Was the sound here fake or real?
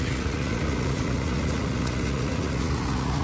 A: fake